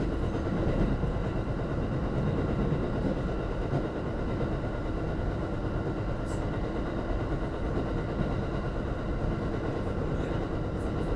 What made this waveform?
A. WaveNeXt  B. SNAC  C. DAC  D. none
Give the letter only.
D